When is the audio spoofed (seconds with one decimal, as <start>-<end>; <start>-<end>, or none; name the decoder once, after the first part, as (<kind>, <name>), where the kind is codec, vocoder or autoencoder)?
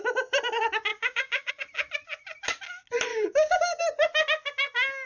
0.9-1.5 (codec, DAC); 3.1-3.8